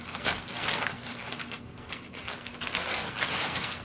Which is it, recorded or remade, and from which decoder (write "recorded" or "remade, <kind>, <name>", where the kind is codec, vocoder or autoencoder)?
remade, codec, SNAC